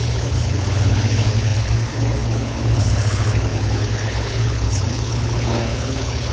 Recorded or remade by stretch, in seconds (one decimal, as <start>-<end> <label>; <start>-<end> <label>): 0.0-6.3 remade